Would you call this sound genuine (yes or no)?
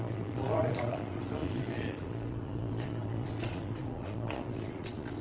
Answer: no